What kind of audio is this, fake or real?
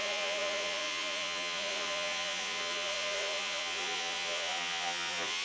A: fake